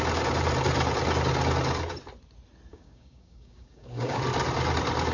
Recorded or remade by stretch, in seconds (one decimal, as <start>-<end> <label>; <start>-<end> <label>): 0.0-2.7 recorded; 2.7-4.2 remade; 4.2-5.1 recorded